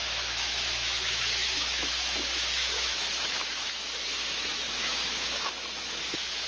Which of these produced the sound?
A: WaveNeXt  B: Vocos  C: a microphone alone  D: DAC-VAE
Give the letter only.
D